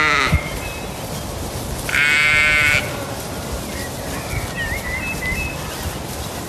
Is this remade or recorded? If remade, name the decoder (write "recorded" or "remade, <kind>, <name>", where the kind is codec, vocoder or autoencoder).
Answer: recorded